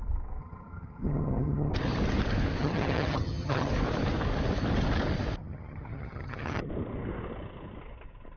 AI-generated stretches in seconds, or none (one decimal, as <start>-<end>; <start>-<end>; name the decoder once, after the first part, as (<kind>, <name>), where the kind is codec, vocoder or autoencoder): 0.4-1.7 (vocoder, HiFi-GAN); 2.6-3.7; 5.4-6.7